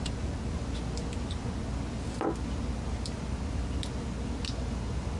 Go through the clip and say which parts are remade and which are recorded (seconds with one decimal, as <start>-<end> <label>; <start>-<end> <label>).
0.0-5.2 recorded

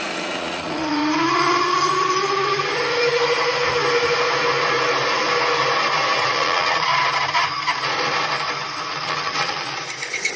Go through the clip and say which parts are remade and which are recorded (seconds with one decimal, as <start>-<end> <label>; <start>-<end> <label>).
0.0-1.0 remade; 1.0-6.2 recorded; 6.2-6.9 remade; 6.9-8.8 recorded; 8.8-10.4 remade

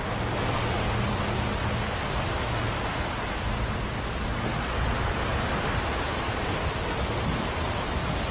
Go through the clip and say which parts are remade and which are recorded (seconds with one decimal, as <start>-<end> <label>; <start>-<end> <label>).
0.0-8.3 recorded

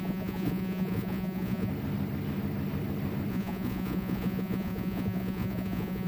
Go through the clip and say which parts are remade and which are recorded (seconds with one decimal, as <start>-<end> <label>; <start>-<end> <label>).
0.0-1.7 remade; 1.7-3.3 recorded; 3.3-6.1 remade

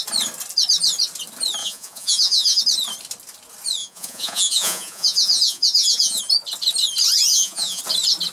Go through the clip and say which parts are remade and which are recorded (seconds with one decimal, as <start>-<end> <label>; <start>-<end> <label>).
0.0-1.6 recorded; 1.6-2.6 remade; 2.6-3.8 recorded; 3.8-6.2 remade; 6.2-7.3 recorded; 7.3-7.8 remade; 7.8-8.3 recorded

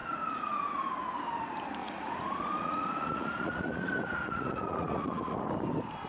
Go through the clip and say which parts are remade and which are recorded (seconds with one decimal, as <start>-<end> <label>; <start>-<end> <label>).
0.0-0.9 remade; 0.9-1.8 recorded; 1.8-5.5 remade; 5.5-6.1 recorded

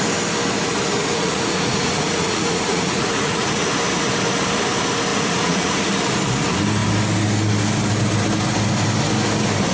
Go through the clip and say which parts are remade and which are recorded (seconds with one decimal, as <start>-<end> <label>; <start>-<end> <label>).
0.0-1.0 recorded; 1.0-3.7 remade; 3.7-5.1 recorded; 5.1-5.9 remade; 5.9-9.7 recorded

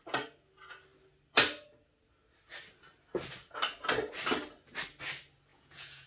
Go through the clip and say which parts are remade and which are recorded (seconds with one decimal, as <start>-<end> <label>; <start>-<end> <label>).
0.0-5.5 recorded; 5.5-6.1 remade